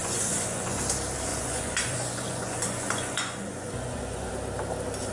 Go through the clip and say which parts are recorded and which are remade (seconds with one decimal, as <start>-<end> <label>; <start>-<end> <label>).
0.0-0.8 remade; 0.8-1.3 recorded; 1.3-4.3 remade; 4.3-5.1 recorded